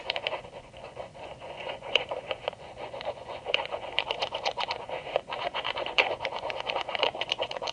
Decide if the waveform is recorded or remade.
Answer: remade